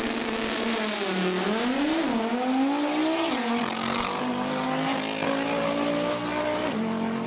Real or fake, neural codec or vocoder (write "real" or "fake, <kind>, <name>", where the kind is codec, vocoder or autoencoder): real